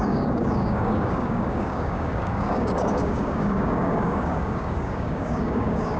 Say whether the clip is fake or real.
fake